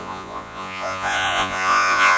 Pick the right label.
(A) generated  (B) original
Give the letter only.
A